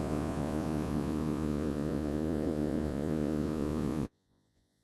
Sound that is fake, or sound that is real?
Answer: fake